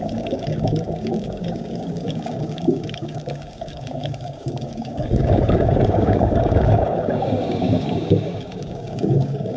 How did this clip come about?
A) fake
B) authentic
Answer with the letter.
A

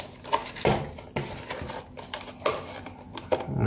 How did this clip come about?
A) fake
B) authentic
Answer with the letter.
B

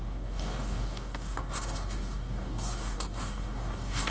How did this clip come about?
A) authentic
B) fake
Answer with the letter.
B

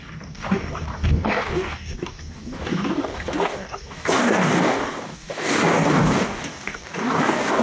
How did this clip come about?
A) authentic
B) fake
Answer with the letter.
B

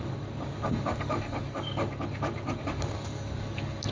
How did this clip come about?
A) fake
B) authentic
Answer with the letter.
A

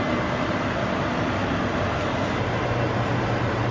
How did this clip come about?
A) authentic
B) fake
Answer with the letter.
A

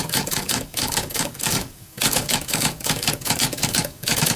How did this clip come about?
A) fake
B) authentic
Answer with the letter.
A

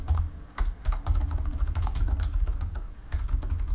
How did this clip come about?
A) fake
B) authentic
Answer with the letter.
A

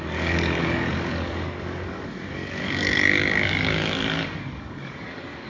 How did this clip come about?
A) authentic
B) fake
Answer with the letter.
B